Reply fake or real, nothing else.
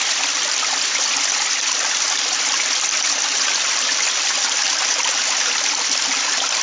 fake